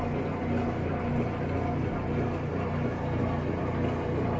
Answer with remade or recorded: recorded